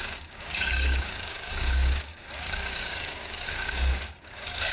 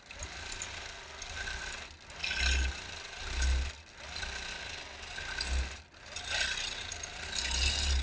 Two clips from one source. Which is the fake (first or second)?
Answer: first